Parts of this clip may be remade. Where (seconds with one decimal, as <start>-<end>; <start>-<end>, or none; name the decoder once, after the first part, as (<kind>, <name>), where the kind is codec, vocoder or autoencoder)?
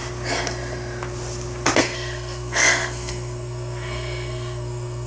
1.8-5.1 (codec, SNAC)